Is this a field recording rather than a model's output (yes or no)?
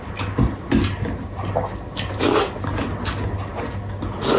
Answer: yes